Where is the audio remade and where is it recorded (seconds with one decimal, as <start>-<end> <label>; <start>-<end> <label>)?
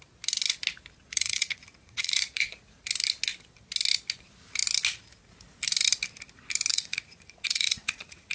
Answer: 0.0-1.0 recorded; 1.0-2.8 remade; 2.8-6.7 recorded; 6.7-8.3 remade